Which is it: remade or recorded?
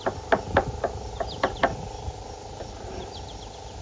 recorded